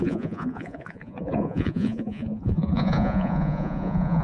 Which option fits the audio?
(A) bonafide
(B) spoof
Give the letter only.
B